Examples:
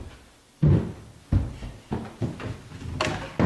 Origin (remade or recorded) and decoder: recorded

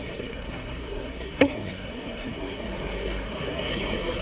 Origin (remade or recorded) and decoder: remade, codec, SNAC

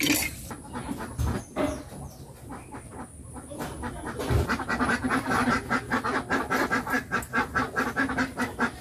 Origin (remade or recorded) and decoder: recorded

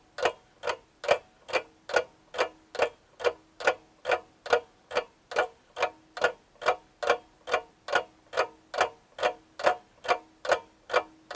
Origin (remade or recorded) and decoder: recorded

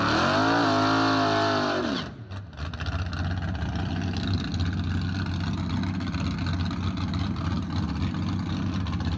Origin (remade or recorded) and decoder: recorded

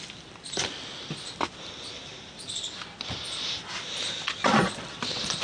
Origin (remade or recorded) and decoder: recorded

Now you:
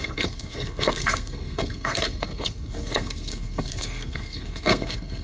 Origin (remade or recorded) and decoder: remade, codec, SNAC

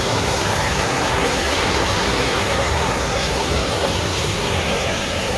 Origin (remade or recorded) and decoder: remade, codec, SNAC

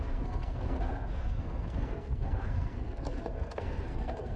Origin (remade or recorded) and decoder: remade, codec, SNAC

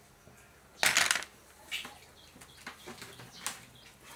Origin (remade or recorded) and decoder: recorded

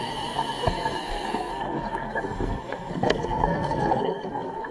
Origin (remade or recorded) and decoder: remade, codec, SNAC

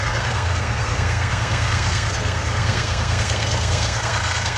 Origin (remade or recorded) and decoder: remade, codec, SNAC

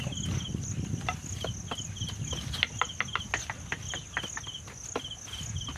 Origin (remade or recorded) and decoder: recorded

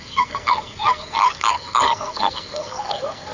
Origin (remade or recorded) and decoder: remade, codec, SNAC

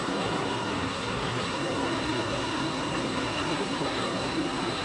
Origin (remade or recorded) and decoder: remade, codec, SNAC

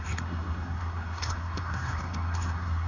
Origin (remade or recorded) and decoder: remade, codec, SNAC